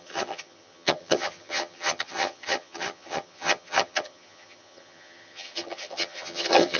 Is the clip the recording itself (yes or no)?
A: no